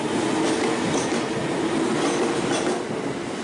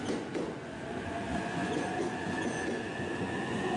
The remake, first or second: second